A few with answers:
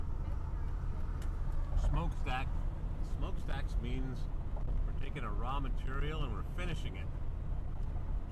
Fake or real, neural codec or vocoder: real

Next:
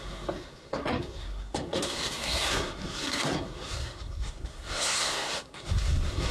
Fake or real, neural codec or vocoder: fake, codec, SNAC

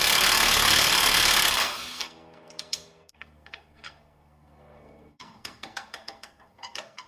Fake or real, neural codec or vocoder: fake, codec, SNAC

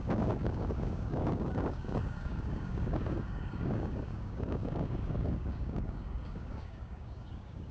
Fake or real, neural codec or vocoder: fake, codec, DAC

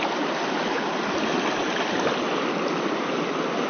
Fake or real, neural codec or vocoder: real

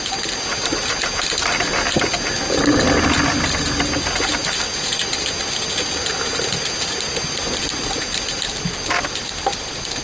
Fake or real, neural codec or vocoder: real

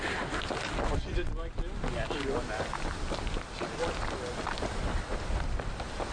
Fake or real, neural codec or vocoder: real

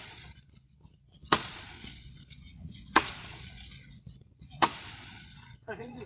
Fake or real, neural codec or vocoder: fake, vocoder, Vocos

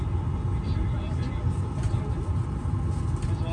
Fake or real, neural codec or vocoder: real